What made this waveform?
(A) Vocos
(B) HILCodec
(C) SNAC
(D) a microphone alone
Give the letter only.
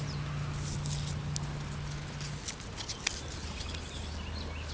D